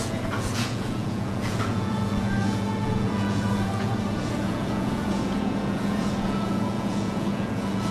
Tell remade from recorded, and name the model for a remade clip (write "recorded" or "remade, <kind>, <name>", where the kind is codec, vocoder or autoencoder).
remade, vocoder, Vocos